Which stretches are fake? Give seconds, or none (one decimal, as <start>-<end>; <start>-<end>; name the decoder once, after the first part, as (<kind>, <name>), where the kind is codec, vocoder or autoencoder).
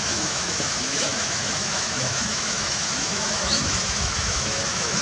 0.0-5.0 (autoencoder, DAC-VAE)